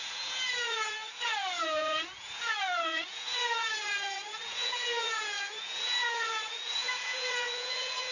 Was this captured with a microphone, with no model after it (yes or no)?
no